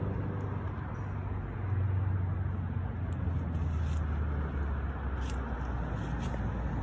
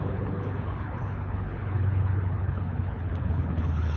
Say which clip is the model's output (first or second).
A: second